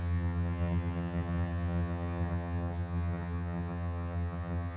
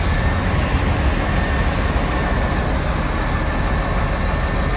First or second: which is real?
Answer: second